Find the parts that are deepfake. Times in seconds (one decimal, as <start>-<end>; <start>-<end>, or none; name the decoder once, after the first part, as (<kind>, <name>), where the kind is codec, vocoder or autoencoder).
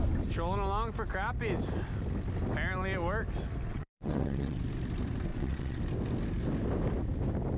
3.7-4.6 (vocoder, WaveNeXt); 5.3-5.8